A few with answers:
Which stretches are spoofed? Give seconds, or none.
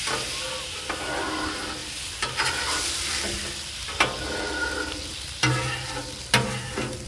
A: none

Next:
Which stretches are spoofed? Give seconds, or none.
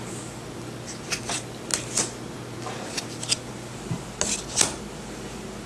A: none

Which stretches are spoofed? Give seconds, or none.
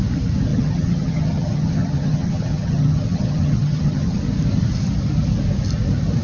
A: 0.5-4.2 (vocoder, HiFi-GAN)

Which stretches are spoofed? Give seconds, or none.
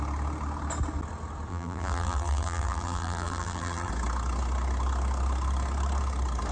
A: 1.5-3.9 (vocoder, BigVGAN v2)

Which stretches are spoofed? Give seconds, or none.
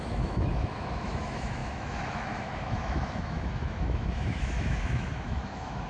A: 0.0-5.9 (autoencoder, DAC-VAE)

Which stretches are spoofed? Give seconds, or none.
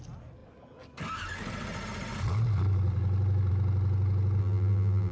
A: 4.4-5.1 (vocoder, BigVGAN v2)